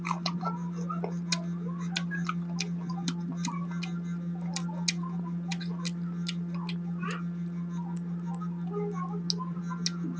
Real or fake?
real